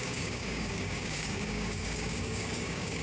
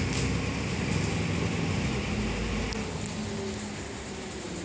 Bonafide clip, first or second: second